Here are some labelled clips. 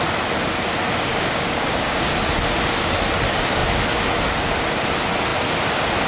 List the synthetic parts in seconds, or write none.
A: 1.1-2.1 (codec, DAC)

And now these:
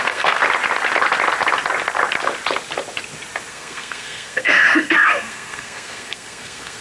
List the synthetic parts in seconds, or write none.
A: 0.0-0.4 (codec, SNAC); 3.5-6.8

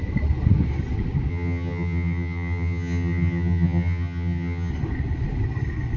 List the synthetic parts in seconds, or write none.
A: 1.3-4.7 (vocoder, HiFi-GAN)

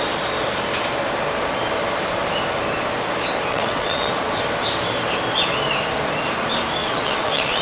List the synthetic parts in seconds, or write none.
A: 3.5-4.1 (vocoder, WaveNeXt); 6.8-7.6

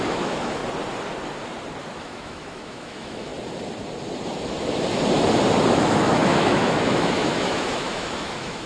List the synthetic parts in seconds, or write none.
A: 0.0-0.6 (autoencoder, DAC-VAE); 2.0-3.3; 5.7-8.7

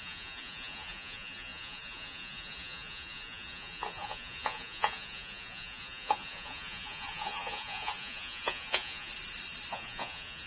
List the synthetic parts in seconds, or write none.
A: 0.0-9.1 (vocoder, Vocos); 9.7-10.5

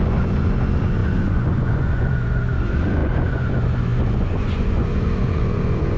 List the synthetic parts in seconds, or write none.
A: 0.0-6.0 (vocoder, Vocos)